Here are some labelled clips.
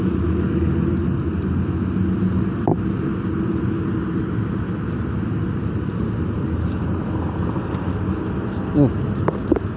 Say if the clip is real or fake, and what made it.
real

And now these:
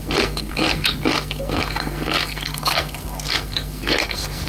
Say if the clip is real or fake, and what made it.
fake, codec, SNAC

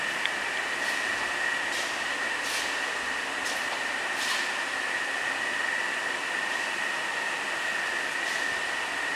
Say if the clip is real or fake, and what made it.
real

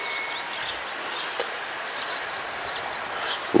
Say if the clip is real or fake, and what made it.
real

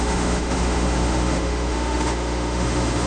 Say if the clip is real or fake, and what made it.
fake, autoencoder, DAC-VAE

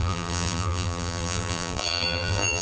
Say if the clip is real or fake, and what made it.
fake, vocoder, BigVGAN v2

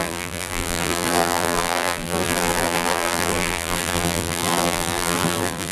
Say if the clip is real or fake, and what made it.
fake, vocoder, BigVGAN v2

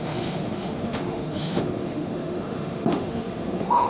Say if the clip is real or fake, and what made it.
fake, autoencoder, DAC-VAE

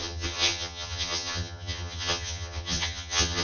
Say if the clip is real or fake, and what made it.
fake, vocoder, HiFi-GAN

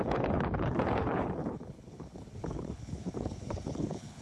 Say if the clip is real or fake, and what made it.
fake, codec, HILCodec